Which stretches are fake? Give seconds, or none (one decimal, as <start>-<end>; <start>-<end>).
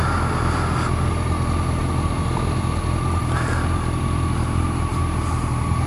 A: none